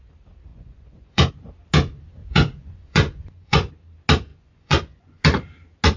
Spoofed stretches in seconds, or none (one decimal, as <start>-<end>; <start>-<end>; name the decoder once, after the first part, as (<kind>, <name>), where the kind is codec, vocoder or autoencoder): 0.5-1.3 (vocoder, Vocos); 2.2-3.7; 4.3-5.2